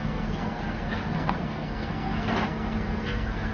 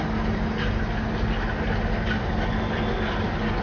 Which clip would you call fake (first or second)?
first